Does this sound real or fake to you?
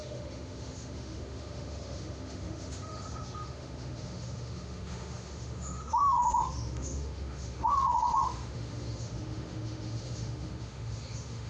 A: fake